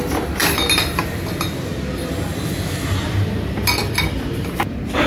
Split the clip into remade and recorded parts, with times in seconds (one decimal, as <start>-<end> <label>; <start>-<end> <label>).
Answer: 0.0-1.7 remade; 1.7-2.5 recorded; 2.5-5.1 remade